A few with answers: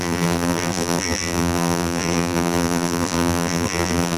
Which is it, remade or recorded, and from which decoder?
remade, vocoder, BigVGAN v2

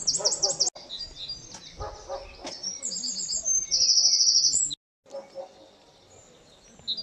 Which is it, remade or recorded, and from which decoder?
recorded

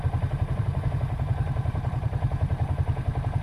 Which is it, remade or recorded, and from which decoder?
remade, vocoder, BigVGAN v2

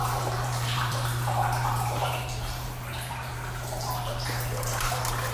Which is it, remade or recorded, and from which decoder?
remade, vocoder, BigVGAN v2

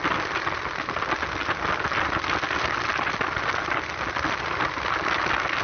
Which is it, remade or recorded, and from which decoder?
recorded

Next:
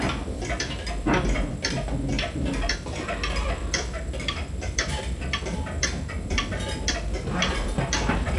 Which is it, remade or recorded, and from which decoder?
remade, vocoder, BigVGAN v2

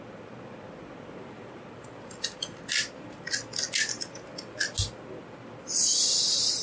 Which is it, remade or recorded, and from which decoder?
recorded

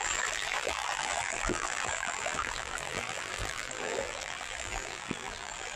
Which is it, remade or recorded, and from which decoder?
remade, vocoder, BigVGAN v2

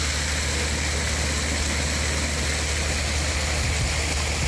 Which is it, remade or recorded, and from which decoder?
recorded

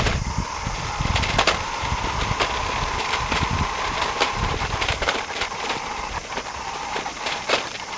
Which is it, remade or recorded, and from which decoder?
remade, vocoder, BigVGAN v2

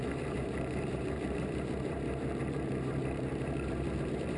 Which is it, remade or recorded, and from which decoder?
remade, vocoder, BigVGAN v2